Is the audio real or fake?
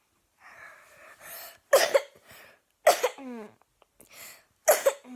real